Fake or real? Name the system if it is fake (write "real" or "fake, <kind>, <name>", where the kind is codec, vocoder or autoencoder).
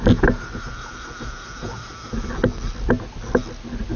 real